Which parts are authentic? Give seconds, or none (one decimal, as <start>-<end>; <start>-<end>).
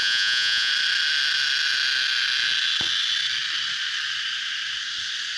0.7-5.4